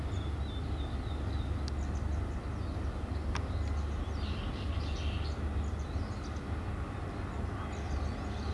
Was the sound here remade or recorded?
recorded